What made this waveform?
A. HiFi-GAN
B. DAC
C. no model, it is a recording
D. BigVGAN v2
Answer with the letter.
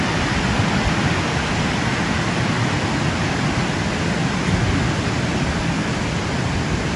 C